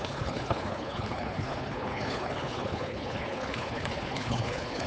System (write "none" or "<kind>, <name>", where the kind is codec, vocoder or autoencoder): codec, HILCodec